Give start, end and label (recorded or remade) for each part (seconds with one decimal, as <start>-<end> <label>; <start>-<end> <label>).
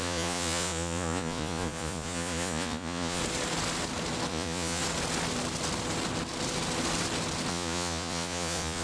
0.0-3.2 remade; 3.2-4.3 recorded; 4.3-4.8 remade; 4.8-7.5 recorded; 7.5-8.8 remade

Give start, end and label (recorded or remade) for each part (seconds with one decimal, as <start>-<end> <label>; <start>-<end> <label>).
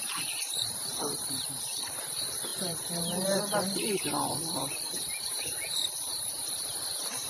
0.0-7.3 remade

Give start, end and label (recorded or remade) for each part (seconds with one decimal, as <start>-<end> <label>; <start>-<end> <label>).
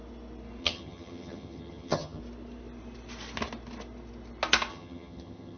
0.0-0.6 recorded; 0.6-2.2 remade; 2.2-4.7 recorded; 4.7-5.6 remade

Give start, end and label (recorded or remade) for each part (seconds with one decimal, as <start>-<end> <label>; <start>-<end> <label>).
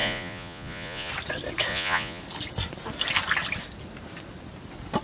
0.0-1.1 remade; 1.1-1.7 recorded; 1.7-2.2 remade; 2.2-5.0 recorded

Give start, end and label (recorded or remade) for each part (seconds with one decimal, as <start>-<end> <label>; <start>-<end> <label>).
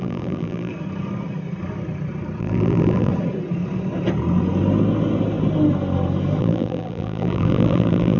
0.0-0.7 remade; 0.7-2.4 recorded; 2.4-3.1 remade; 3.1-6.4 recorded; 6.4-8.2 remade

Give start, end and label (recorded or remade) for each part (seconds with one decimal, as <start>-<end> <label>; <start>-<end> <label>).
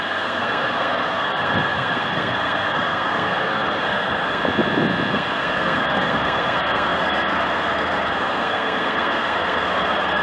0.0-4.4 remade; 4.4-5.1 recorded; 5.1-10.2 remade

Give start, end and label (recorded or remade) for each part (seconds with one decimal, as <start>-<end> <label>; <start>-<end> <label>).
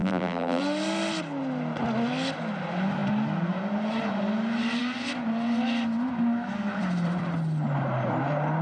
0.0-0.6 remade; 0.6-8.6 recorded